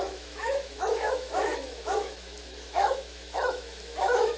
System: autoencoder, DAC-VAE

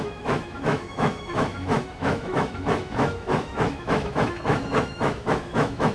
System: autoencoder, DAC-VAE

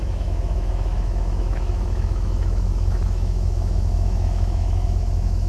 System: autoencoder, DAC-VAE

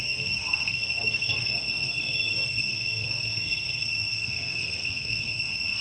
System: codec, SNAC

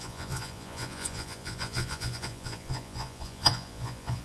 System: vocoder, Vocos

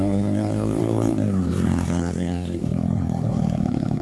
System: codec, SNAC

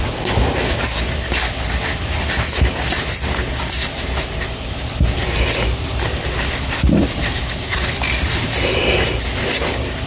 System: none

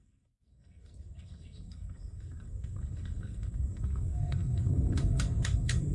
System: codec, SNAC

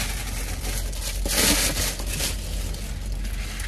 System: none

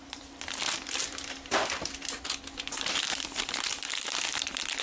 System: vocoder, BigVGAN v2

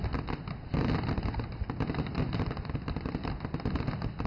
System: none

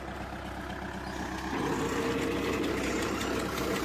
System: none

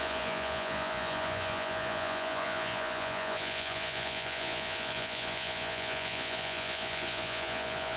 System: vocoder, Vocos